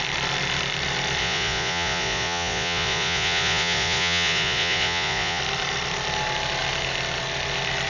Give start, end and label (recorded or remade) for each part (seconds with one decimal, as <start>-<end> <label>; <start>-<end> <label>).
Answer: 0.0-1.2 recorded; 1.2-5.4 remade; 5.4-7.9 recorded

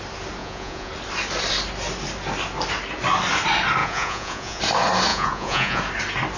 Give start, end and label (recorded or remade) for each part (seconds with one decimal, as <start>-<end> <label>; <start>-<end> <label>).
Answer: 0.0-0.4 recorded; 0.4-0.9 remade; 0.9-3.8 recorded; 3.8-4.6 remade; 4.6-5.1 recorded; 5.1-5.8 remade; 5.8-6.4 recorded

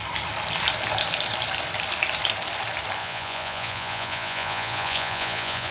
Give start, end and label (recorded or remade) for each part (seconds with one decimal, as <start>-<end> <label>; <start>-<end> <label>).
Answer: 0.0-3.0 recorded; 3.0-5.7 remade

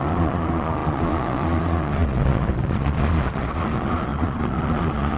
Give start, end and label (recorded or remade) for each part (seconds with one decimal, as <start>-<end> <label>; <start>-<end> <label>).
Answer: 0.0-5.2 remade

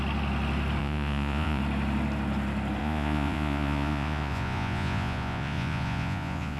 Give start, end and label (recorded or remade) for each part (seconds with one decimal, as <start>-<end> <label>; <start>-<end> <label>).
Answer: 0.0-0.8 recorded; 0.8-1.6 remade; 1.6-2.8 recorded; 2.8-6.6 remade

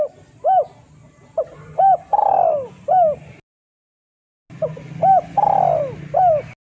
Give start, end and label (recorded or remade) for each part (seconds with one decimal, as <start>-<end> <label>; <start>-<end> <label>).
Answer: 0.0-6.8 recorded

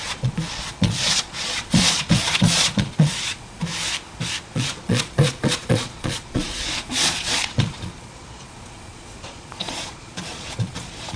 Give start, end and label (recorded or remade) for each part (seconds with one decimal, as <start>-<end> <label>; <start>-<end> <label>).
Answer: 0.0-3.7 remade; 3.7-4.4 recorded; 4.4-11.2 remade